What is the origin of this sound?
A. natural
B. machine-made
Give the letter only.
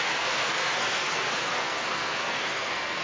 B